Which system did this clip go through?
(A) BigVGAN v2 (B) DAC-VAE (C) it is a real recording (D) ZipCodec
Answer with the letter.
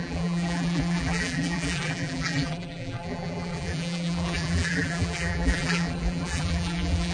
A